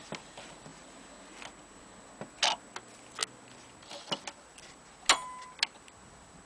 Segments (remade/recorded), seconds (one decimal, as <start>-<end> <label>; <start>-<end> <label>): 0.0-6.5 recorded